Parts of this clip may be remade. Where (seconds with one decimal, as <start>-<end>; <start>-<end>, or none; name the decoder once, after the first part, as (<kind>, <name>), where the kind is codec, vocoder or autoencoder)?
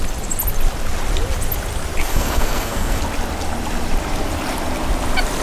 2.0-3.0 (codec, SNAC)